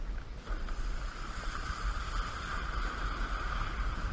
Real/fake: fake